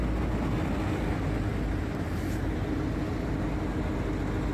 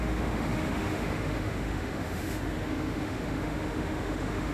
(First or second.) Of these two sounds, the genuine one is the first